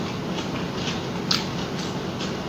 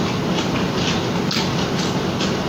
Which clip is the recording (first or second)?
first